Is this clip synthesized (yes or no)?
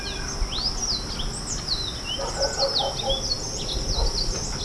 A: no